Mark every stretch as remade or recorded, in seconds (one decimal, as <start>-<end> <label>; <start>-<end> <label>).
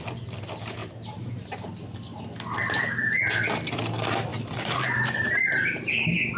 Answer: 0.0-0.8 recorded; 0.8-1.4 remade; 1.4-4.3 recorded; 4.3-5.9 remade; 5.9-6.4 recorded